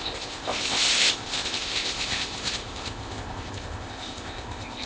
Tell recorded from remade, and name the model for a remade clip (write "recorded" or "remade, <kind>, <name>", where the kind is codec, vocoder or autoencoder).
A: remade, codec, ZipCodec